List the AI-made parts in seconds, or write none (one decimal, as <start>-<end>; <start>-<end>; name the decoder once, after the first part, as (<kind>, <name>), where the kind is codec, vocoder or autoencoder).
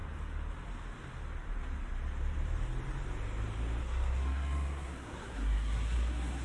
3.8-6.4 (codec, SNAC)